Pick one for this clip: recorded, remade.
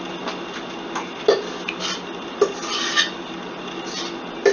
recorded